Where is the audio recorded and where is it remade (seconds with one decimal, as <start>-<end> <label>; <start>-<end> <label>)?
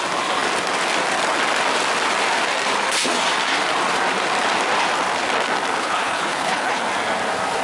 0.0-5.8 recorded; 5.8-6.8 remade; 6.8-7.6 recorded